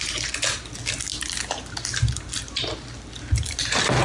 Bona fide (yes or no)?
yes